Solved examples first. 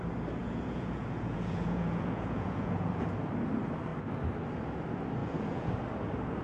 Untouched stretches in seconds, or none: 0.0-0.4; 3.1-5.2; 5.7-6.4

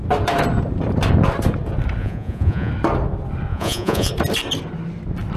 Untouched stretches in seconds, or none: 0.0-2.0; 2.7-3.5; 4.1-5.4

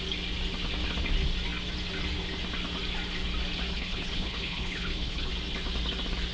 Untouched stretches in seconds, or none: 0.0-3.7; 5.3-6.3

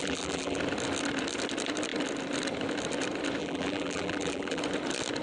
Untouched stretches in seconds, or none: 0.6-3.4; 4.6-5.2

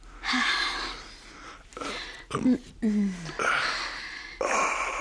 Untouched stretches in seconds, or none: 0.0-5.0